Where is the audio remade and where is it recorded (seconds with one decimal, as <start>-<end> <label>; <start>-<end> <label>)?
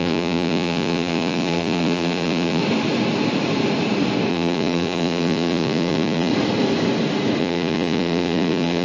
0.0-2.6 remade; 2.6-4.3 recorded; 4.3-6.3 remade; 6.3-7.4 recorded; 7.4-8.8 remade